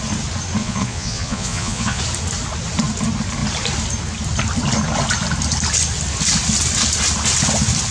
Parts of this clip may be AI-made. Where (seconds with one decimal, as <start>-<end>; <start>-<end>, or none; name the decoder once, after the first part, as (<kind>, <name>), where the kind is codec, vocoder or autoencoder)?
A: 0.6-2.0 (vocoder, Vocos)